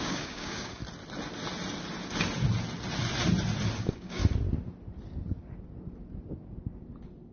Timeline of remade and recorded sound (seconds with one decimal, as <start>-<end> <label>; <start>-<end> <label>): 0.0-0.8 remade; 0.8-3.8 recorded; 3.8-4.2 remade; 4.2-7.3 recorded